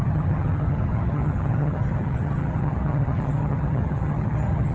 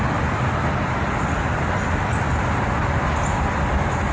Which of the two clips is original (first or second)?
second